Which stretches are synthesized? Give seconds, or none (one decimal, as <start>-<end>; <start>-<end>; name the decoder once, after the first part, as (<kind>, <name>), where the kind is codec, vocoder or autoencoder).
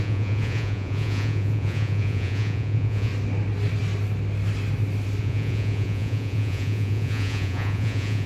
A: 0.0-3.1 (vocoder, Vocos); 5.2-8.3